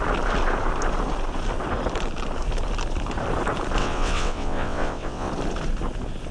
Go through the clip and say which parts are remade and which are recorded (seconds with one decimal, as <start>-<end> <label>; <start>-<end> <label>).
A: 0.0-3.8 recorded; 3.8-5.3 remade; 5.3-6.3 recorded